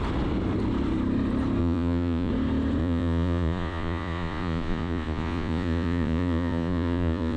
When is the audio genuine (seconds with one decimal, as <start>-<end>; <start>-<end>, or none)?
0.0-1.6; 2.3-2.8